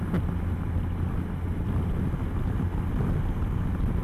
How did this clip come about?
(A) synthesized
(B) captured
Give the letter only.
B